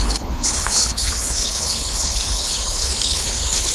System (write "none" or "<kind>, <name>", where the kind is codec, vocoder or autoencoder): codec, HILCodec